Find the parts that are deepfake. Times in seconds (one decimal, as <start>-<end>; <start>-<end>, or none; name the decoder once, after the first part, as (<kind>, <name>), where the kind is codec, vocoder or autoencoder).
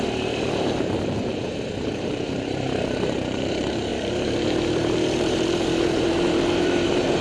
0.0-7.2 (vocoder, BigVGAN v2)